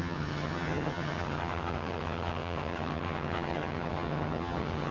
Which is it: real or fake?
fake